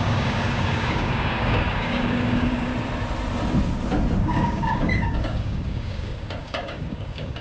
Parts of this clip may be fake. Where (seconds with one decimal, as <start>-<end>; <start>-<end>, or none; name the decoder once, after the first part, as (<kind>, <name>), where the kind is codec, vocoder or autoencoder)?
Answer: 0.0-2.7 (codec, DAC); 4.2-7.4